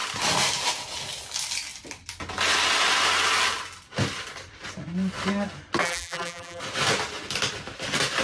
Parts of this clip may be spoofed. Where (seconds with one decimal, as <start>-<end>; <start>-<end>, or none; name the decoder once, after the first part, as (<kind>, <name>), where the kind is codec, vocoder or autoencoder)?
5.8-6.6 (vocoder, BigVGAN v2)